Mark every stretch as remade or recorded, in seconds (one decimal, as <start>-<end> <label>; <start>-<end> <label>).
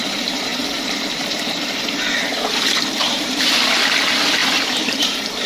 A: 0.0-5.5 remade